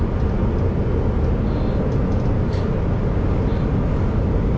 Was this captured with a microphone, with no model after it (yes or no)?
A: yes